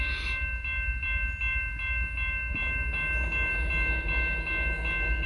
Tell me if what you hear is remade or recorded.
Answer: recorded